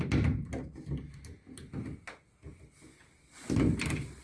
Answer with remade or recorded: recorded